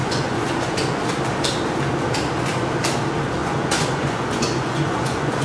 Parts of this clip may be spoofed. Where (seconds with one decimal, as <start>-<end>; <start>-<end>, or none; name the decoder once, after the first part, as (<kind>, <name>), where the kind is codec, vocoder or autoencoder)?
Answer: 0.0-1.0 (vocoder, Vocos); 3.4-5.4